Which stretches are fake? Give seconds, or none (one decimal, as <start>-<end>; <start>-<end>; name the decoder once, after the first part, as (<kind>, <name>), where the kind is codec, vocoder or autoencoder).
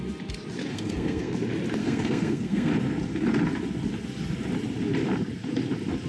0.7-1.3 (codec, SNAC); 1.8-2.7